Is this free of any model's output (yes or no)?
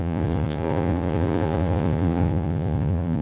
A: no